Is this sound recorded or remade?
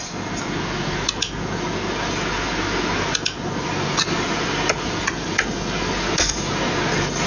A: recorded